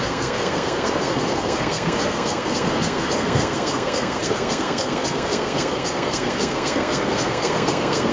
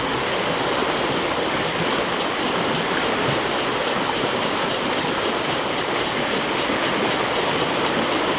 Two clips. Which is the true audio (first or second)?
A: second